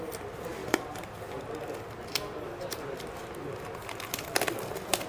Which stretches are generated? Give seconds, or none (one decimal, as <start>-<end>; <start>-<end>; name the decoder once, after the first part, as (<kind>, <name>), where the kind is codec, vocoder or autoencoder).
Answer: 0.6-1.4 (vocoder, BigVGAN v2)